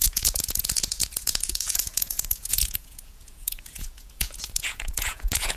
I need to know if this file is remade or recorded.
remade